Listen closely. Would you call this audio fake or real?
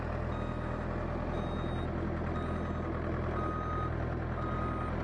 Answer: real